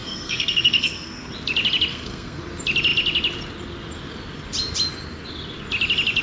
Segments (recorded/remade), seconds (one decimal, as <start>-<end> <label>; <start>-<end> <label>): 0.0-1.3 remade; 1.3-1.9 recorded; 1.9-2.4 remade; 2.4-6.2 recorded